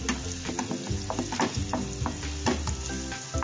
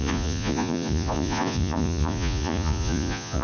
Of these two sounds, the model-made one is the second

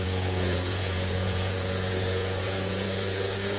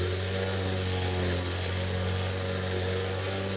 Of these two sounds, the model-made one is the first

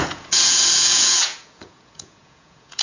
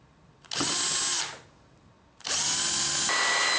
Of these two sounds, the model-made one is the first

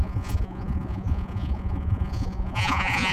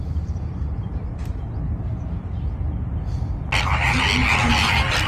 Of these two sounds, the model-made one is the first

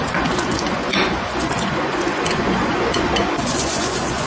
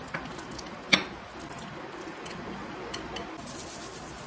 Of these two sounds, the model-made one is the first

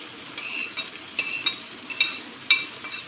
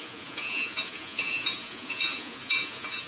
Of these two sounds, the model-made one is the second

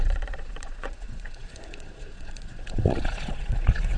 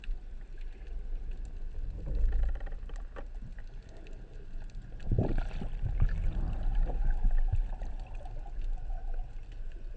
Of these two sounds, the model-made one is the first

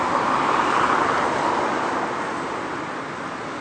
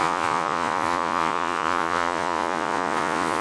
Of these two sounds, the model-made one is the second